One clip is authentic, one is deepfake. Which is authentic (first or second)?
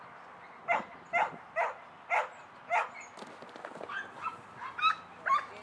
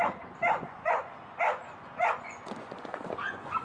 first